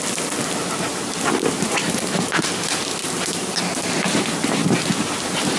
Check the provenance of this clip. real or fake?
real